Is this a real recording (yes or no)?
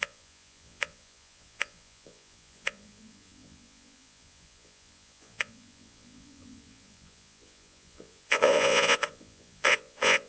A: no